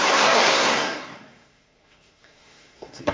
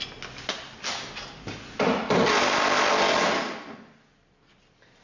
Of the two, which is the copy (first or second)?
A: first